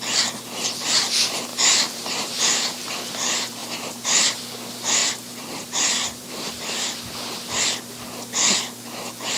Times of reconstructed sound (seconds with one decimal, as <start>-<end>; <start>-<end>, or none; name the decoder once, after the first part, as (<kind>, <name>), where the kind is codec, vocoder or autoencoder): 1.5-2.9 (vocoder, BigVGAN v2); 3.6-4.4; 5.0-7.0